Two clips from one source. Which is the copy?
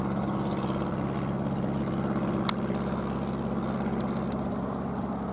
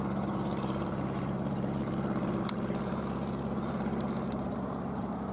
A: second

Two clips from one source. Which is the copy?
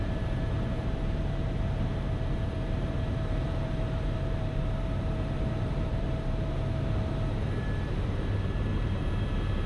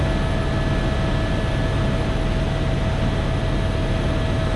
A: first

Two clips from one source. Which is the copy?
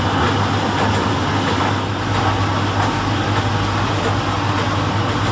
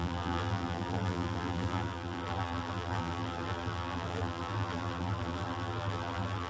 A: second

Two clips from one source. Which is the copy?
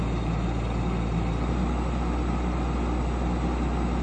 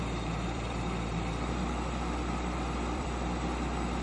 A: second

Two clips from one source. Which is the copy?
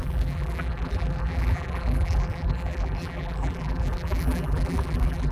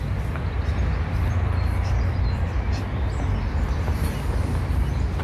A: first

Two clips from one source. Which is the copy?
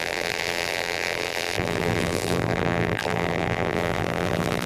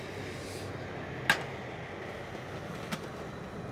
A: first